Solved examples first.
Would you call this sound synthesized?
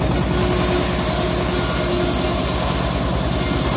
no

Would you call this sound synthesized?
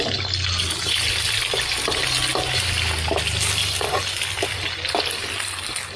no